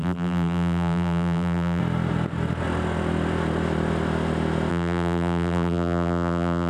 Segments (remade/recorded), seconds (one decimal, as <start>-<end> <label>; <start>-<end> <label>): 0.0-1.8 remade; 1.8-4.7 recorded; 4.7-6.7 remade